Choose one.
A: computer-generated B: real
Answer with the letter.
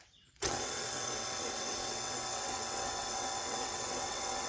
A